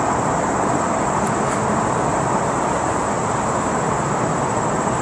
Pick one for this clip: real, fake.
real